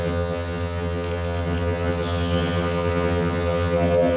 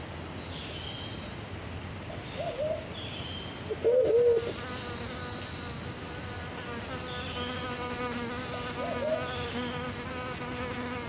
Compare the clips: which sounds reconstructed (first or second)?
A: first